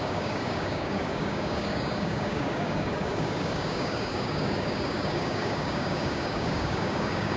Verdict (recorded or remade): remade